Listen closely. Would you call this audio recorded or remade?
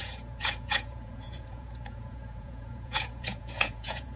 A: remade